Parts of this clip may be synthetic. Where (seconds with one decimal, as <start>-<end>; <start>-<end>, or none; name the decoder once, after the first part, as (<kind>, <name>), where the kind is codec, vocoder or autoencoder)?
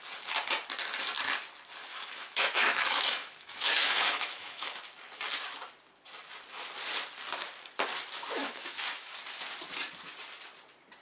1.9-4.8 (autoencoder, DAC-VAE); 8.4-9.1